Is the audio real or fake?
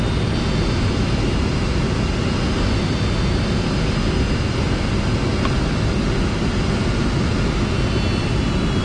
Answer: real